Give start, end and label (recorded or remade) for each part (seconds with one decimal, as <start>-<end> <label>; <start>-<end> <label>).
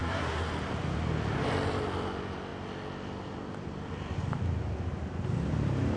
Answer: 0.0-0.5 remade; 0.5-6.0 recorded